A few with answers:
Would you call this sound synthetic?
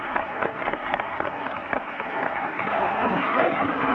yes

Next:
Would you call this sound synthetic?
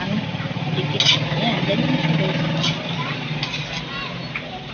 no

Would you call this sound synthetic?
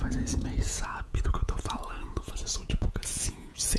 yes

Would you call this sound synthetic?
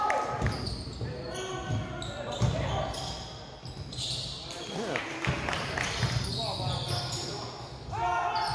no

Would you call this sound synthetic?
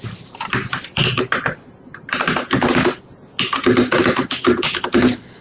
yes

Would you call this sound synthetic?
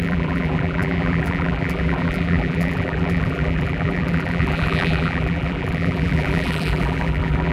yes